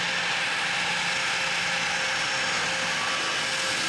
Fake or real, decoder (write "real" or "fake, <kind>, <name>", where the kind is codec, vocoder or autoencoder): real